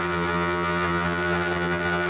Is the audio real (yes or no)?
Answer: no